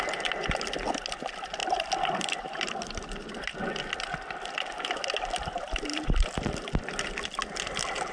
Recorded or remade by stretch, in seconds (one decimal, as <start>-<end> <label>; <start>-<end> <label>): 0.0-1.6 recorded; 1.6-6.5 remade; 6.5-8.1 recorded